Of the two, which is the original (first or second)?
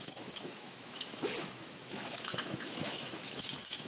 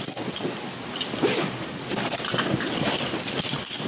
second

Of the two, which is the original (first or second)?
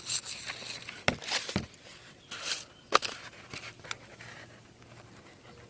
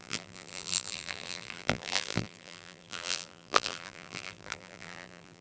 first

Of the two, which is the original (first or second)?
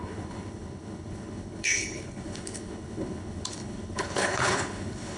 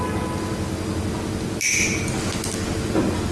second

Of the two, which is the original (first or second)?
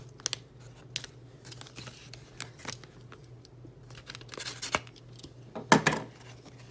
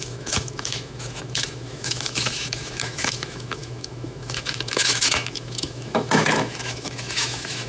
first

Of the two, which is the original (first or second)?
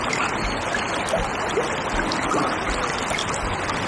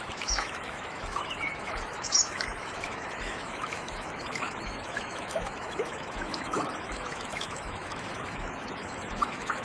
first